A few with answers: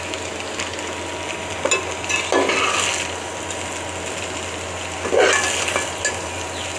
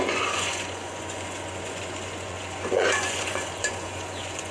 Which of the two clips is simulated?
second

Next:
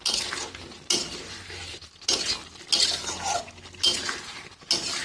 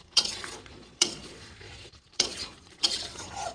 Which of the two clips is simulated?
second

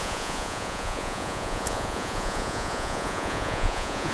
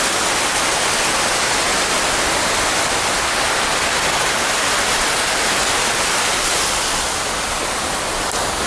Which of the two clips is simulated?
first